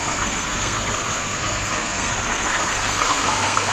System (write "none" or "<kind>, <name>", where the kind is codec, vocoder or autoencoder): codec, SNAC